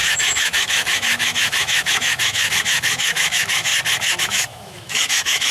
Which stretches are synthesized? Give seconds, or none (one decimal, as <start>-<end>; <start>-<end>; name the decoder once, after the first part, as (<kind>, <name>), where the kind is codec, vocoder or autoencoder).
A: 0.0-3.7 (autoencoder, DAC-VAE); 4.2-5.5